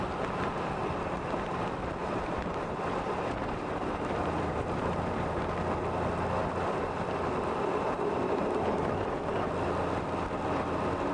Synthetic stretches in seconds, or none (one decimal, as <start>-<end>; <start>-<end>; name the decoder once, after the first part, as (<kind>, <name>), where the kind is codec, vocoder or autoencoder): 2.0-5.4 (vocoder, BigVGAN v2)